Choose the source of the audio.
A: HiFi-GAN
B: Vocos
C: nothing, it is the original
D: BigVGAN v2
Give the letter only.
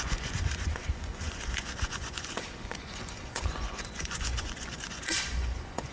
B